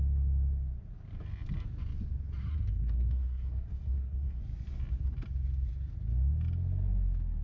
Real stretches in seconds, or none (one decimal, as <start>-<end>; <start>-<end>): 0.0-2.4; 4.4-7.4

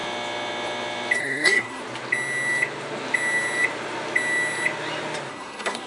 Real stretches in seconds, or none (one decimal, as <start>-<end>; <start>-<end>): 0.0-1.2; 1.8-5.3